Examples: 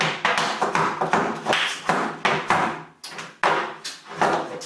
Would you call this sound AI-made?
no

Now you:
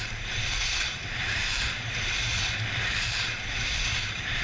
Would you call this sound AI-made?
yes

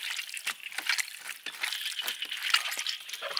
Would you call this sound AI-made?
no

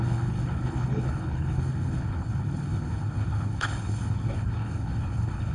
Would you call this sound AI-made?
yes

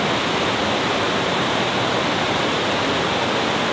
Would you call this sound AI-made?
no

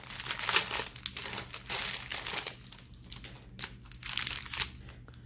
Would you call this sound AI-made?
no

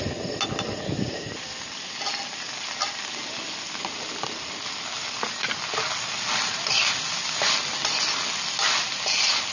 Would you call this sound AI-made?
no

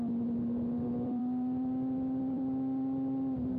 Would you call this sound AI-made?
yes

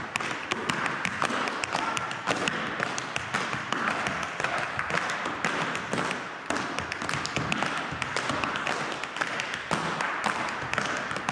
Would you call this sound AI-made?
no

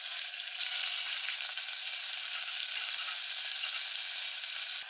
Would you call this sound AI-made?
no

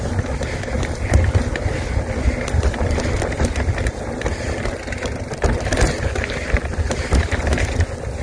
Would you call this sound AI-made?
no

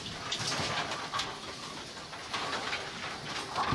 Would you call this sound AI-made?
no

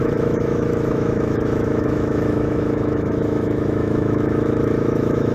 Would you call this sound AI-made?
yes